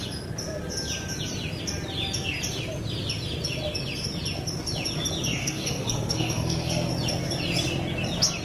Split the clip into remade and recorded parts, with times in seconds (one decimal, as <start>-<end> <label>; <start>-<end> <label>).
0.0-5.4 recorded; 5.4-6.9 remade; 6.9-8.4 recorded